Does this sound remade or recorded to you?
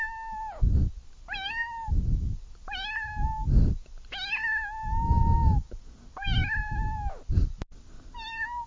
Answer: recorded